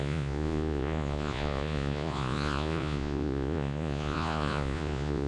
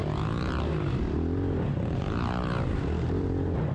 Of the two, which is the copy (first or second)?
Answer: first